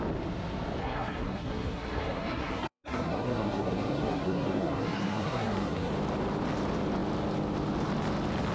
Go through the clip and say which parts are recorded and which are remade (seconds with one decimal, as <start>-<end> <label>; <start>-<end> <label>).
0.0-0.8 recorded; 0.8-5.9 remade; 5.9-8.5 recorded